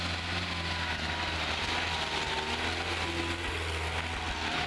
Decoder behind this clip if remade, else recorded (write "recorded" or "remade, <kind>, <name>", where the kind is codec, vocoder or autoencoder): recorded